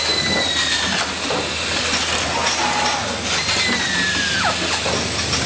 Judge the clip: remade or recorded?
recorded